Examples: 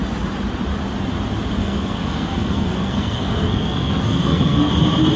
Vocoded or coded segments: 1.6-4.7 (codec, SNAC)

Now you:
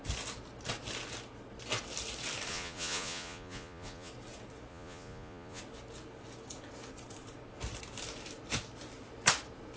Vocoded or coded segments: 2.5-4.1 (vocoder, Vocos); 4.7-5.6

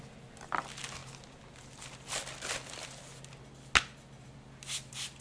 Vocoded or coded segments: none

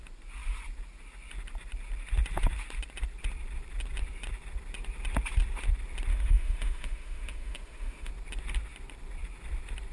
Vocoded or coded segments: 6.1-8.1 (autoencoder, DAC-VAE)

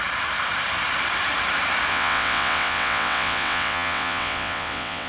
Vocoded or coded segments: 1.9-5.1 (vocoder, WaveNeXt)

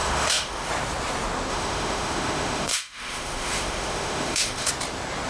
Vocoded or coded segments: 0.0-0.7 (autoencoder, DAC-VAE); 1.5-4.7

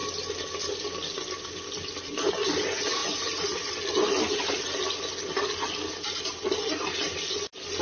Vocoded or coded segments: none

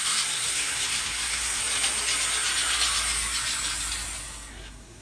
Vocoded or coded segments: 0.0-1.6 (codec, SNAC); 4.5-5.0